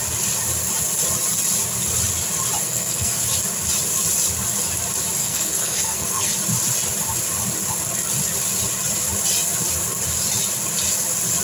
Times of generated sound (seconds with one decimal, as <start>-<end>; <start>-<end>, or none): 2.6-3.2; 5.2-6.3